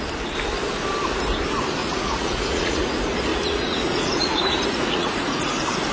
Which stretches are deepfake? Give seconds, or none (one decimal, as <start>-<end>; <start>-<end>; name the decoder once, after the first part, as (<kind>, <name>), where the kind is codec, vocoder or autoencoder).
1.8-2.9 (vocoder, Vocos); 3.3-5.5